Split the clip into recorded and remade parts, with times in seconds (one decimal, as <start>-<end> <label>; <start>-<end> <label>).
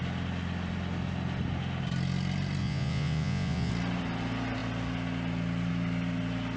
0.0-2.6 recorded; 2.6-3.7 remade; 3.7-6.6 recorded